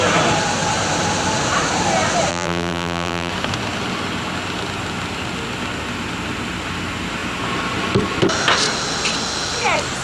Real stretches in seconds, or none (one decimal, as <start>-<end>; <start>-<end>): 0.0-2.3; 3.3-10.0